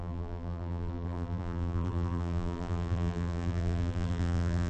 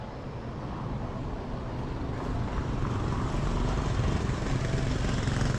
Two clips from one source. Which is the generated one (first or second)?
first